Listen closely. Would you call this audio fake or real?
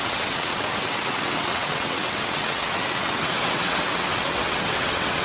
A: fake